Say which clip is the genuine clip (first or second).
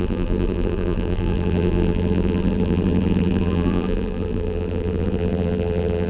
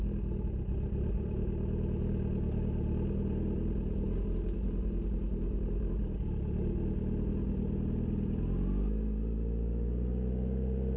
second